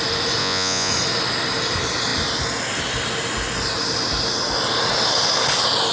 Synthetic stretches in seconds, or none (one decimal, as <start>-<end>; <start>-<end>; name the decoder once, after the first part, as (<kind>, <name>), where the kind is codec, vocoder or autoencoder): 0.4-0.9 (vocoder, Vocos)